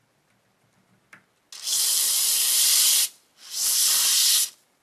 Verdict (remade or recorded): recorded